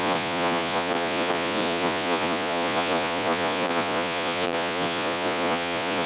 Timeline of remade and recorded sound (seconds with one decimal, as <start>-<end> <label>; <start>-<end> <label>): 0.0-6.1 remade